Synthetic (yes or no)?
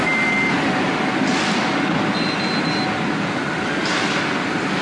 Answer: no